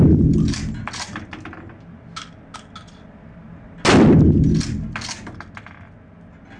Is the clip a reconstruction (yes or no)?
no